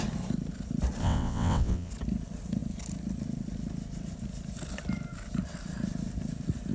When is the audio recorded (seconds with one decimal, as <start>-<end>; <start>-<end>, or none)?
0.0-1.0; 1.9-6.7